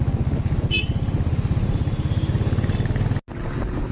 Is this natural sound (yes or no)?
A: yes